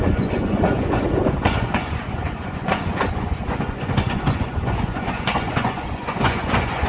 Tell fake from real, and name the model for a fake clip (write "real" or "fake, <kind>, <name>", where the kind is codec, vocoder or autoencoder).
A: fake, vocoder, Vocos